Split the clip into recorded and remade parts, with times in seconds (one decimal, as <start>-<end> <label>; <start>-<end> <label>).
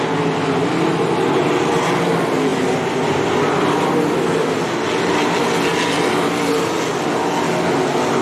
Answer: 0.0-8.2 recorded